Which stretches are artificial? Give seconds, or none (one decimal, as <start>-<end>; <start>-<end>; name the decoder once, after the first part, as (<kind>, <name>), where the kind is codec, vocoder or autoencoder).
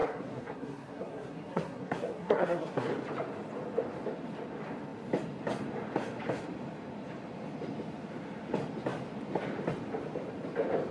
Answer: 0.0-2.9 (codec, SNAC)